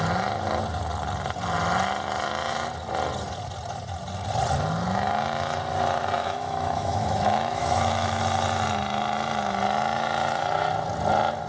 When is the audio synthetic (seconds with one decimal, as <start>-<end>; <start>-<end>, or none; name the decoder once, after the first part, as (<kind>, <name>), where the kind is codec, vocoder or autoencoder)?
6.2-8.2 (autoencoder, DAC-VAE)